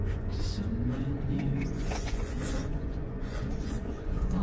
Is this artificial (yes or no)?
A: yes